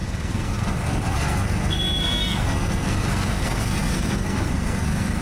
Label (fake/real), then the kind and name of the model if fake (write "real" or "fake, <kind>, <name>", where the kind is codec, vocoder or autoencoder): fake, codec, SNAC